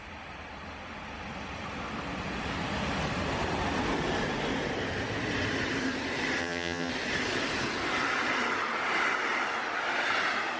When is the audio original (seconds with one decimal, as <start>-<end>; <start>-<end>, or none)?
0.0-6.4; 6.9-10.6